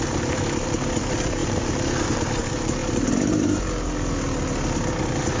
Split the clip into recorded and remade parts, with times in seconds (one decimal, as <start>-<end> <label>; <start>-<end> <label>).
0.0-2.8 recorded; 2.8-3.6 remade; 3.6-5.4 recorded